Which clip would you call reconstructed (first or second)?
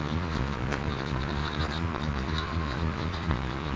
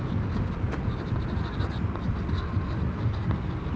first